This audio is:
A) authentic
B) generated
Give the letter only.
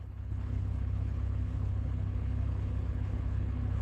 B